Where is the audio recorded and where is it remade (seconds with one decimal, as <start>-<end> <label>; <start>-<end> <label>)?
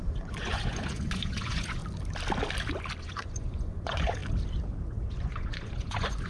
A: 0.0-1.8 remade; 1.8-3.0 recorded; 3.0-4.2 remade; 4.2-5.1 recorded; 5.1-6.3 remade